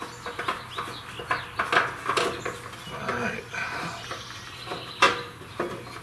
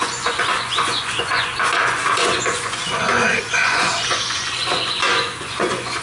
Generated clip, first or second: second